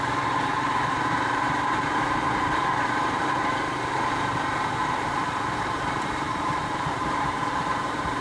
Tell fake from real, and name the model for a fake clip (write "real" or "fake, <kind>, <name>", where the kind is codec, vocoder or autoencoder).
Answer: fake, vocoder, BigVGAN v2